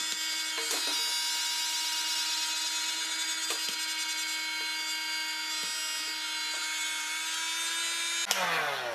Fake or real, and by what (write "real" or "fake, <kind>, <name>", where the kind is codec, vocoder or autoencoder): real